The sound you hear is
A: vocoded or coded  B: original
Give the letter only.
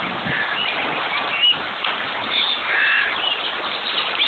B